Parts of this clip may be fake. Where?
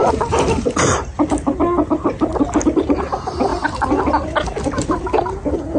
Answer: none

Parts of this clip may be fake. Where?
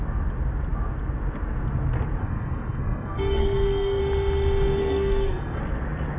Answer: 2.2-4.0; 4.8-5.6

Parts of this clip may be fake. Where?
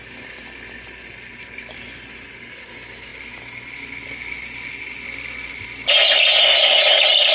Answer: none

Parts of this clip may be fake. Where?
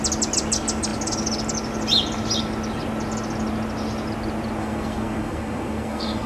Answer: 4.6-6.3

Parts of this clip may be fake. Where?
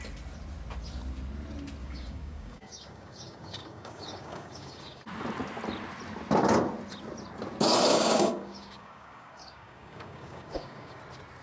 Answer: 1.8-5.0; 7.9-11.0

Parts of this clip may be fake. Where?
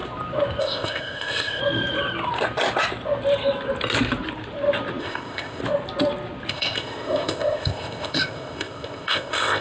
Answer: 0.6-1.6; 5.0-5.6; 6.5-9.6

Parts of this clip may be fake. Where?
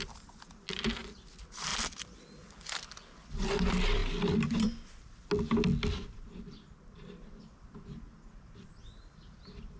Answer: 1.7-2.2